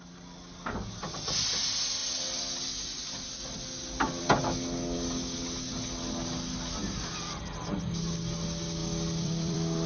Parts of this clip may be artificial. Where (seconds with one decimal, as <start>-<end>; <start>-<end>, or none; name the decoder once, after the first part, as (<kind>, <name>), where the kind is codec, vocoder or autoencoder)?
8.8-9.9 (vocoder, BigVGAN v2)